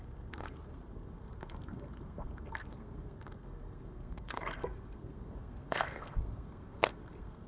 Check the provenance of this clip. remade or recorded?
remade